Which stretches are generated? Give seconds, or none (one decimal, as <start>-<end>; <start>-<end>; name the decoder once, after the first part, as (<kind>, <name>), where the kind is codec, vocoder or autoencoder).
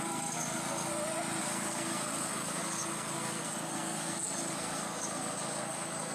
0.0-0.9 (codec, SNAC); 1.4-6.1